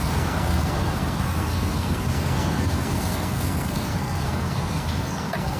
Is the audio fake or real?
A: fake